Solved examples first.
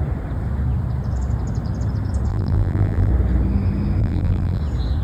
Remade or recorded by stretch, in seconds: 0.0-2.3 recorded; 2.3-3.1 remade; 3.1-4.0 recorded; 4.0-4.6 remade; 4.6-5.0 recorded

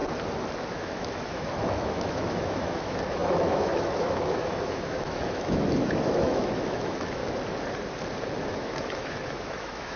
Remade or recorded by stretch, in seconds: 0.0-0.7 recorded; 0.7-7.2 remade; 7.2-8.5 recorded; 8.5-10.0 remade

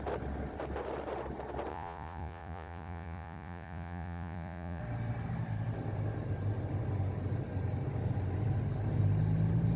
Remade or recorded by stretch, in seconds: 0.0-1.7 recorded; 1.7-4.8 remade; 4.8-9.8 recorded

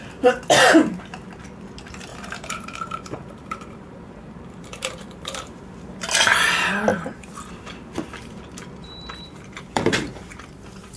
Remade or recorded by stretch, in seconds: 0.0-2.1 recorded; 2.1-5.6 remade; 5.6-6.9 recorded; 6.9-7.5 remade; 7.5-8.8 recorded; 8.8-10.3 remade; 10.3-11.0 recorded

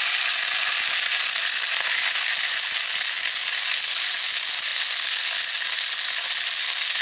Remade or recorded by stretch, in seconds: 0.0-7.0 recorded

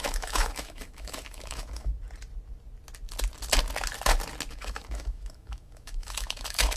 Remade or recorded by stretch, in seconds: 0.0-1.9 remade; 1.9-4.5 recorded; 4.5-6.8 remade

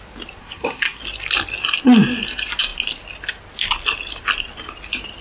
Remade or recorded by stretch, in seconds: 0.0-0.4 recorded; 0.4-1.0 remade; 1.0-5.2 recorded